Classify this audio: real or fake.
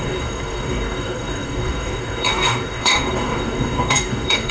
fake